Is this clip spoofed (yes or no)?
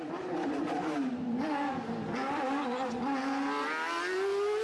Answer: no